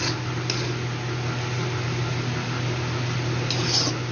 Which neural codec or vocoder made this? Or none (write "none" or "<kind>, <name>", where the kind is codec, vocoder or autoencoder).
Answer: none